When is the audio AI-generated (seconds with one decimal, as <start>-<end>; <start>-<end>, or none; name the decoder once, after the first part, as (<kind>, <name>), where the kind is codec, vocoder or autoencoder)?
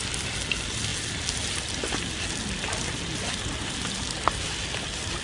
none